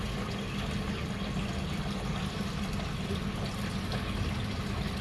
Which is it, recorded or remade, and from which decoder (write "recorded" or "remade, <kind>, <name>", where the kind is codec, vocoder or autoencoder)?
recorded